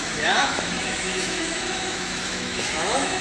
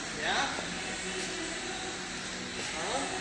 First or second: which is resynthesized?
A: first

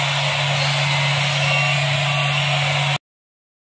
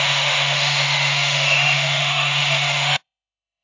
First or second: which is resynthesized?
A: second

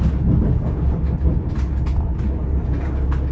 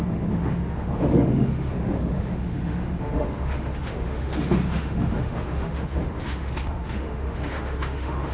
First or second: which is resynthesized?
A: second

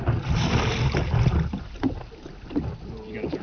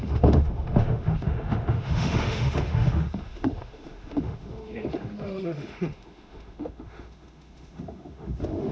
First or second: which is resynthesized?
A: second